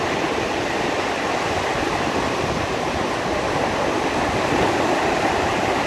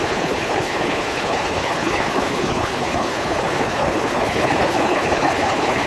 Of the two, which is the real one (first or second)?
first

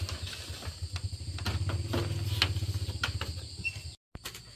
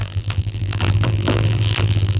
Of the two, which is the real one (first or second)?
first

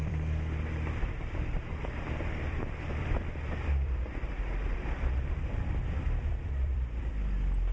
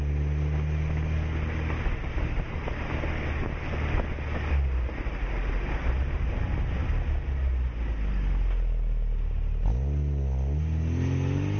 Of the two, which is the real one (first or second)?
second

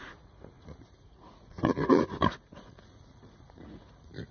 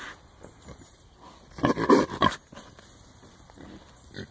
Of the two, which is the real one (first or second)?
second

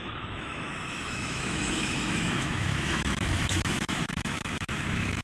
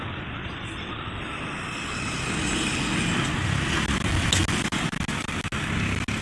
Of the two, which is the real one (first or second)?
second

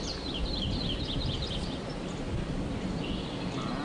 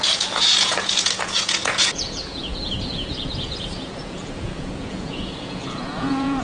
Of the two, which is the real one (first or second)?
first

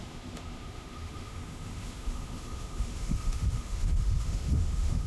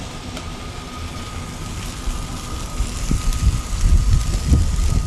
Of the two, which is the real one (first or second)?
second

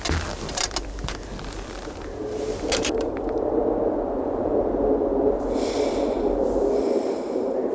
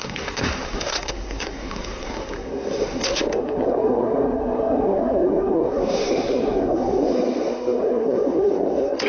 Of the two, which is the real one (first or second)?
first